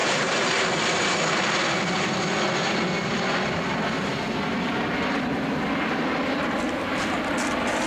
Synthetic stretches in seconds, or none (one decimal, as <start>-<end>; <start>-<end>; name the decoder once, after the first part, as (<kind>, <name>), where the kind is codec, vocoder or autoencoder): none